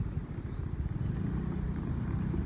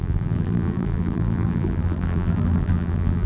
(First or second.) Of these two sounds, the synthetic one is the second